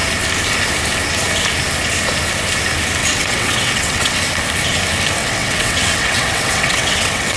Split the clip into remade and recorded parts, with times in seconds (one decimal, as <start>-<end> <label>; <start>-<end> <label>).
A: 0.0-3.0 recorded; 3.0-4.2 remade; 4.2-5.2 recorded; 5.2-7.4 remade